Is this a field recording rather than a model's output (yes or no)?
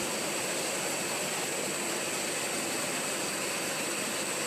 yes